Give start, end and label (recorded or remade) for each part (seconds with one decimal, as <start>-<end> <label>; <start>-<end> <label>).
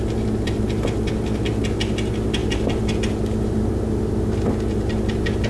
0.0-5.5 recorded